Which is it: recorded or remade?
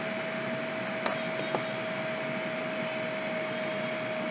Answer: recorded